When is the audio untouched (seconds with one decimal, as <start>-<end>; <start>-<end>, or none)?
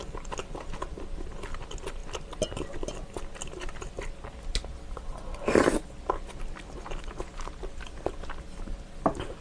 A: 0.0-9.4